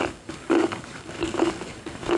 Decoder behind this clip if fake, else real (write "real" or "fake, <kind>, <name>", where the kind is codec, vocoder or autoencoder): fake, codec, DAC